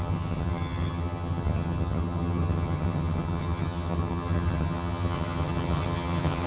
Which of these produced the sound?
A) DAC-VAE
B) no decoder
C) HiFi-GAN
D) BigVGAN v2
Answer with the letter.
C